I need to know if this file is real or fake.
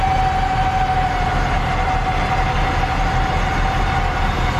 real